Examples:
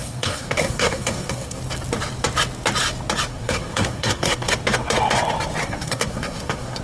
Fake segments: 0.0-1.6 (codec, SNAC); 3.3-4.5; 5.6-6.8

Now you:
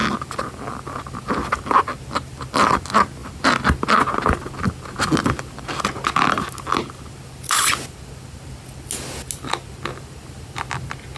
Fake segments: none

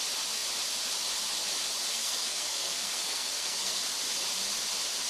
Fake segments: 1.9-3.8 (codec, SNAC)

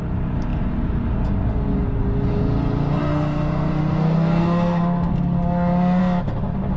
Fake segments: 3.0-6.0 (codec, SNAC)

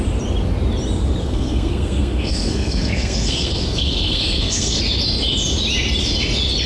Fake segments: 1.2-4.8 (codec, SNAC)

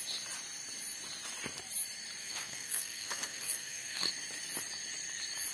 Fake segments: 2.2-4.1 (codec, SNAC)